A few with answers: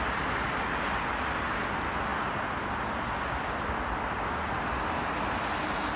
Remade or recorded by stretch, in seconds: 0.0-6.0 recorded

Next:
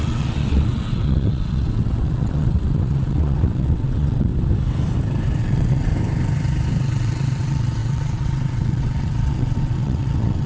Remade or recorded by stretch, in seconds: 0.0-4.3 remade; 4.3-5.4 recorded; 5.4-5.9 remade; 5.9-6.8 recorded; 6.8-10.5 remade